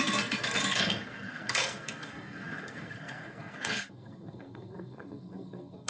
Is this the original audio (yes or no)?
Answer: no